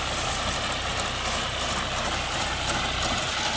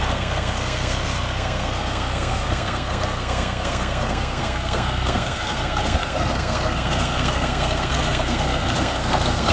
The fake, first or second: second